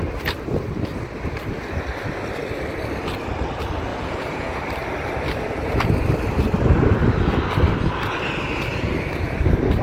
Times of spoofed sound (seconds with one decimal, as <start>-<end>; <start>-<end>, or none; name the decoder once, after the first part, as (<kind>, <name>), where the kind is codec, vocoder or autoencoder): 3.9-4.6 (vocoder, Vocos)